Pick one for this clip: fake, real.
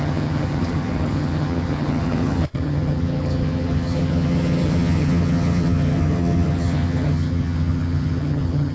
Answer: fake